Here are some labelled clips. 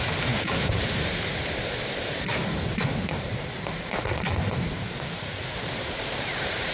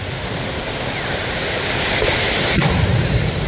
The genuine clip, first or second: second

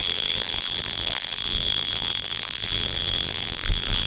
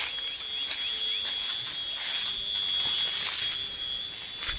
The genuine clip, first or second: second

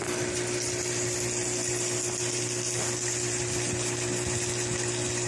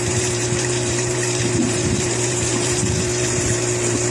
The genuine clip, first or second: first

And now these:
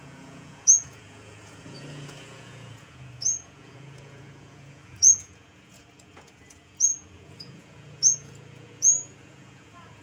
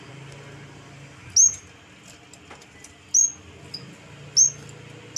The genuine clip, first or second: second